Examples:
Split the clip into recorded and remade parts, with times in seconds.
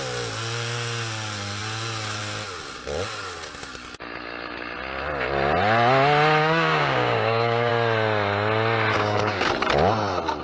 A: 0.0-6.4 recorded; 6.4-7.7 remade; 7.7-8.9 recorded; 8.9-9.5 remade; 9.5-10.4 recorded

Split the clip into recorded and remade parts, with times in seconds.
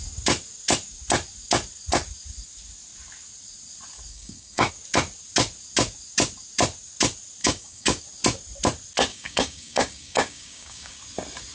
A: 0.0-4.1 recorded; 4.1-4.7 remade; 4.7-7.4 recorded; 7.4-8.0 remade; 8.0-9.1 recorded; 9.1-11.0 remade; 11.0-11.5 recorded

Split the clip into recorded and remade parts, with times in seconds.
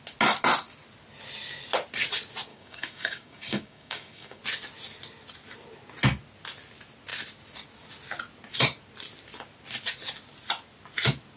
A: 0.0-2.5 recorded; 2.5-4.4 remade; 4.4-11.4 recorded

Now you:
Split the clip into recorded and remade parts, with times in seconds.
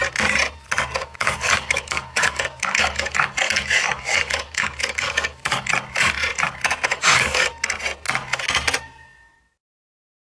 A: 0.0-1.0 recorded; 1.0-5.7 remade; 5.7-6.9 recorded; 6.9-7.5 remade; 7.5-10.2 recorded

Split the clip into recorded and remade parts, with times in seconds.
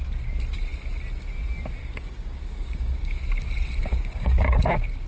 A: 0.0-1.8 recorded; 1.8-3.2 remade; 3.2-3.8 recorded; 3.8-4.6 remade; 4.6-5.1 recorded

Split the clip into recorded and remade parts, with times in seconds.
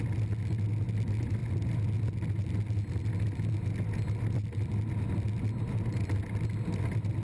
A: 0.0-7.2 recorded